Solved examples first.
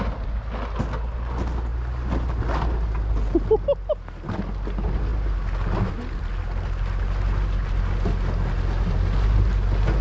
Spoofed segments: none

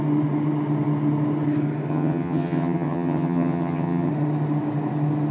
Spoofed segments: 1.9-4.1 (vocoder, HiFi-GAN)

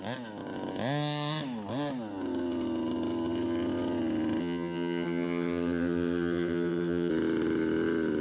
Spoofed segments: 4.4-7.1 (vocoder, HiFi-GAN)

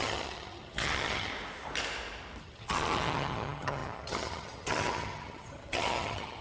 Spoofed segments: 0.0-1.3 (vocoder, HiFi-GAN); 2.4-6.4

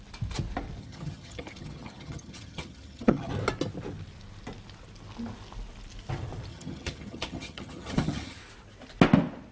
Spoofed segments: 0.8-3.3 (vocoder, HiFi-GAN); 6.5-8.4

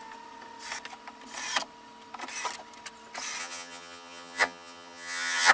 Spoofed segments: 3.4-5.5 (vocoder, HiFi-GAN)

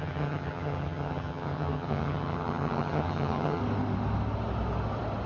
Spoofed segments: 0.0-3.6 (vocoder, HiFi-GAN)